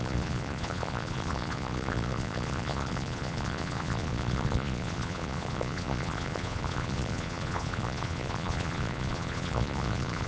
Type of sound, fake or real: fake